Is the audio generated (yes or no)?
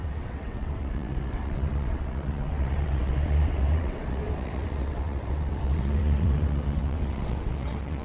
yes